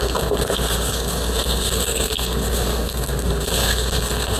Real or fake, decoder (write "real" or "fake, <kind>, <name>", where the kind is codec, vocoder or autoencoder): fake, codec, SNAC